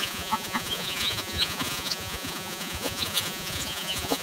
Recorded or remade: remade